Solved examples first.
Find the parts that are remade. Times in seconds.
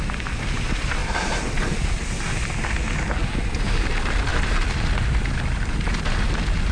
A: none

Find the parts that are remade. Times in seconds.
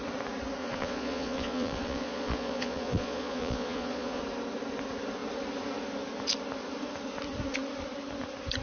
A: 0.6-4.2 (vocoder, Vocos)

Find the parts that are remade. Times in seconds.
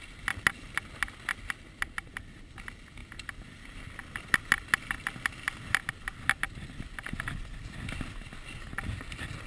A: none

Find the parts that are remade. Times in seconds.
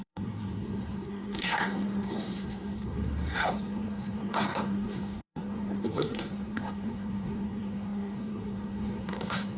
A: 0.0-9.6 (codec, SNAC)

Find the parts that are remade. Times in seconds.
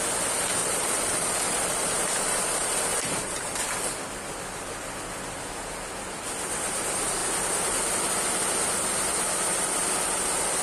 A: 0.6-3.6 (vocoder, BigVGAN v2)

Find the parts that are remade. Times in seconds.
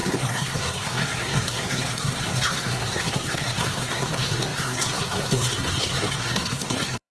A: 0.0-7.1 (codec, SNAC)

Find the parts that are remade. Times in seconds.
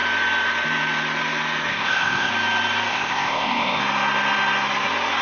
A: 1.7-2.3 (codec, ZipCodec); 2.9-3.8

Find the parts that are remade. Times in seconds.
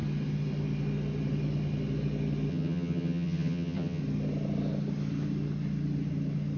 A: 2.5-4.0 (vocoder, HiFi-GAN)